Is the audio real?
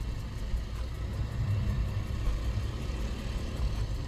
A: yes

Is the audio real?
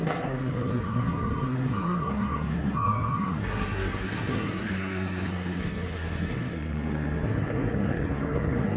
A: no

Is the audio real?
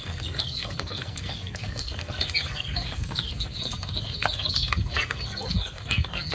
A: no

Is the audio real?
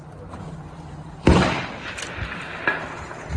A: yes